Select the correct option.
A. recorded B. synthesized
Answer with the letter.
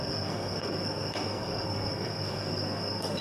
B